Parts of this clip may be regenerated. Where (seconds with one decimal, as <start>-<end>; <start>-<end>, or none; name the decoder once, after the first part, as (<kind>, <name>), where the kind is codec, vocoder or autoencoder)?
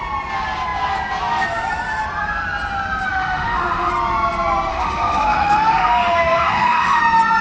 3.1-3.9 (autoencoder, DAC-VAE); 4.7-7.0